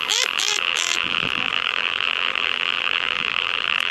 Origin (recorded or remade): remade